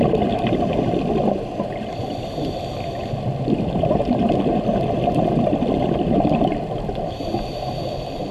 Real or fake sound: real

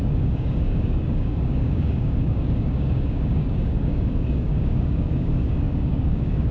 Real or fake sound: fake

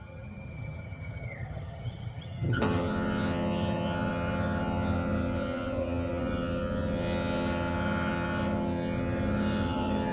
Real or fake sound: fake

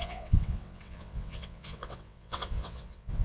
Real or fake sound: fake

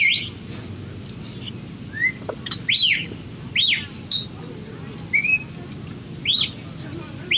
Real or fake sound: real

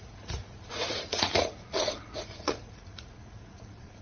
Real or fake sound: fake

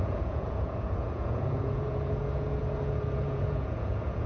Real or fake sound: fake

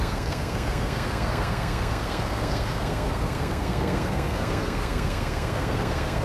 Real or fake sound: fake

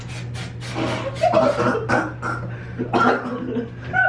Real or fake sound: real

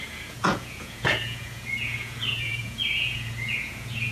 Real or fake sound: fake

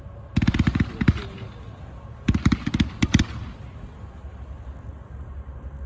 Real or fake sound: real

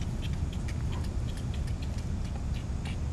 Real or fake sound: real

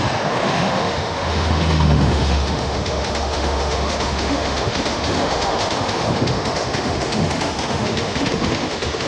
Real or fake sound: fake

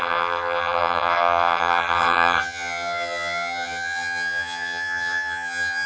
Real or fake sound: fake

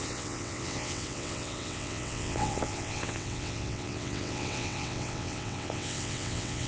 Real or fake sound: fake